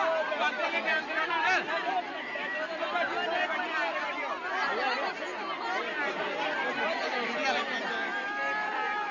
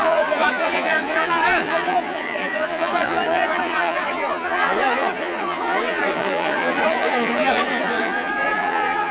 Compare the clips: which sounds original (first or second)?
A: first